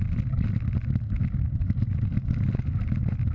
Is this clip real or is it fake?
real